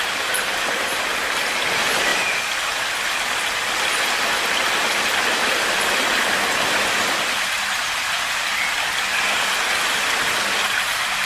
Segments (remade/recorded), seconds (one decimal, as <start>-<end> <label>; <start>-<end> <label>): 0.0-11.3 recorded